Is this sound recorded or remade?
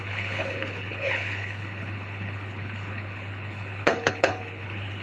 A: remade